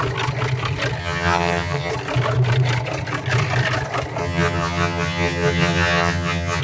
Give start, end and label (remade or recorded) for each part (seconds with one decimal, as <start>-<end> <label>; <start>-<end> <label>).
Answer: 0.0-1.0 recorded; 1.0-1.9 remade; 1.9-4.2 recorded; 4.2-6.6 remade